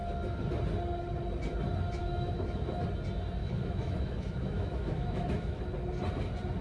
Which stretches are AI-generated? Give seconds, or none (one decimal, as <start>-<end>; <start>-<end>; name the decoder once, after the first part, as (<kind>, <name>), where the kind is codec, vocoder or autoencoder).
2.0-2.8 (autoencoder, DAC-VAE); 3.4-5.6